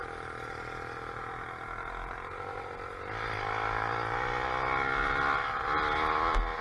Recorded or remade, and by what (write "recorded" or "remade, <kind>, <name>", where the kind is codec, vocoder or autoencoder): recorded